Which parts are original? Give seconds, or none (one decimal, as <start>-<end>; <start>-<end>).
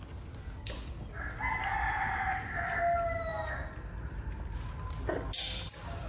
0.0-6.1